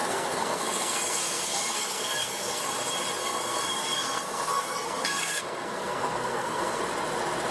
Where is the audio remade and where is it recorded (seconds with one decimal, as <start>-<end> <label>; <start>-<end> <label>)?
0.0-2.6 remade; 2.6-3.2 recorded; 3.2-6.8 remade; 6.8-7.5 recorded